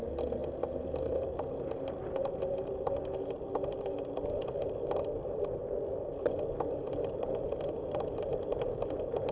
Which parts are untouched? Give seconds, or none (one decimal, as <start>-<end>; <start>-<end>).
0.0-9.3